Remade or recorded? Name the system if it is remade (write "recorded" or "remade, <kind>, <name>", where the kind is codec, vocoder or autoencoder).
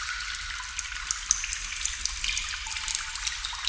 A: recorded